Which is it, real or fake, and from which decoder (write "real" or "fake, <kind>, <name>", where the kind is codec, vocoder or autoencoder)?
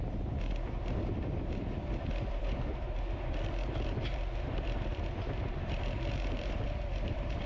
fake, vocoder, BigVGAN v2